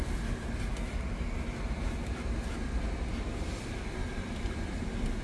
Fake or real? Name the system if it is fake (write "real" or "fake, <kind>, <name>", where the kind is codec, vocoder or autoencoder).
real